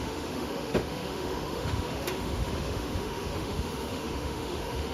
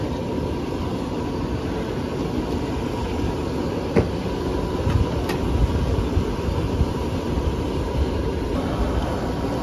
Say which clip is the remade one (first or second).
first